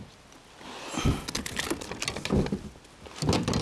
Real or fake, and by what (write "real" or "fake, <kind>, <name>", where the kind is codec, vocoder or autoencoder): real